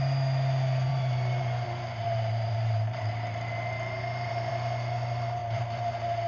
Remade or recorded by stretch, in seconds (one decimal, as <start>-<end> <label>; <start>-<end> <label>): 0.0-0.9 recorded; 0.9-4.5 remade; 4.5-6.3 recorded